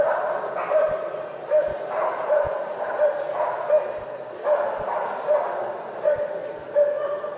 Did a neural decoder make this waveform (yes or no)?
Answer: no